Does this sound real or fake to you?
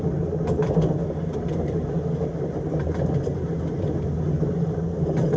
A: real